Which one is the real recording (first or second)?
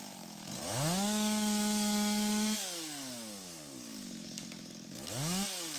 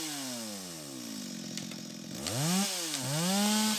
second